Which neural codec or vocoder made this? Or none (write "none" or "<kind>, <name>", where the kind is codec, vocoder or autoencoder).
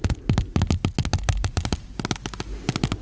none